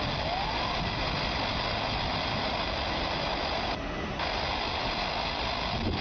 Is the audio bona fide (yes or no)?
yes